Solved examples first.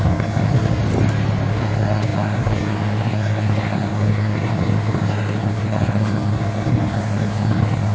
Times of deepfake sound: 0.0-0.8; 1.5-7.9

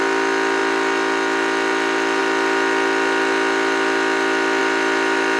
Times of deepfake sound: none

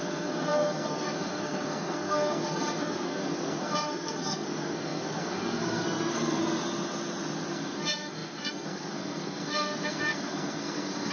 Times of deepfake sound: 0.0-6.4; 7.5-11.1

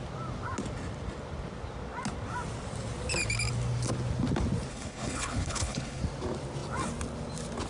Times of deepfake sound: 4.7-6.0